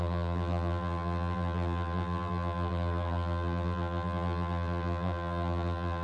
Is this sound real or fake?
fake